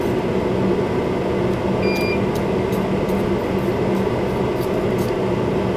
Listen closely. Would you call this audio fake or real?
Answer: real